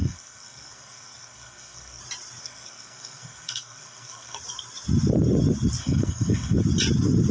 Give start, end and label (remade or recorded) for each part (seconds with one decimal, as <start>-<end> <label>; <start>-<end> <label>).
0.0-2.0 remade; 2.0-2.4 recorded; 2.4-4.4 remade; 4.4-5.8 recorded; 5.8-6.6 remade; 6.6-7.3 recorded